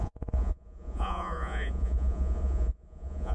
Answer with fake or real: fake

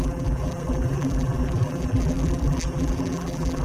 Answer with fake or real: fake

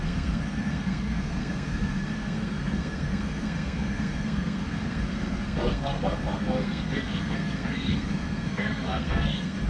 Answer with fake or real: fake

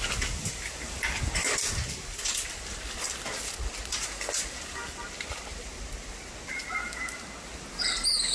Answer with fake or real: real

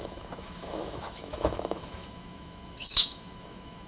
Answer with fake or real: fake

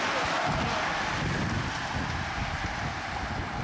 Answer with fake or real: real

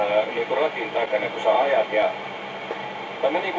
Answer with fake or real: real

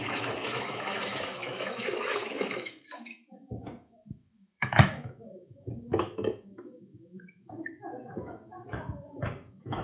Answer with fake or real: fake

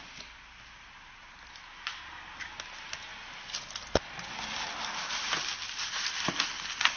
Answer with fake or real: real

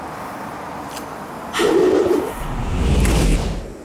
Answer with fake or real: real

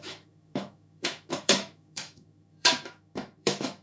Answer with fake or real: fake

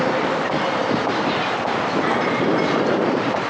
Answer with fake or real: real